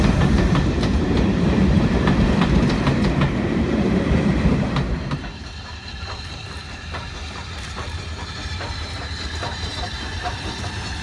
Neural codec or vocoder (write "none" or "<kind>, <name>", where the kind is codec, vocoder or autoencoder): vocoder, BigVGAN v2